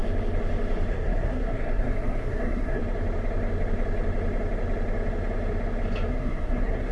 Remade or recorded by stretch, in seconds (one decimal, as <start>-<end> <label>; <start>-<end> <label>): 0.0-0.9 recorded; 0.9-2.8 remade; 2.8-6.1 recorded; 6.1-6.9 remade